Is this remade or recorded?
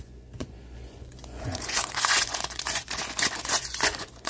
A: remade